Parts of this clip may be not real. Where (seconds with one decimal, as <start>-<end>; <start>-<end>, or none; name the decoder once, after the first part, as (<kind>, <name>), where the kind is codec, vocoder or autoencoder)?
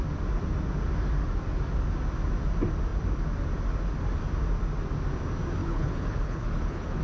5.6-7.0 (codec, HILCodec)